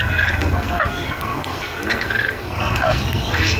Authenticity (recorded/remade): remade